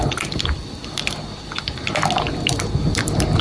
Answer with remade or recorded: remade